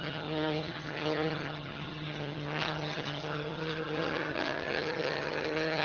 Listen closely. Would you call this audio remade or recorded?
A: remade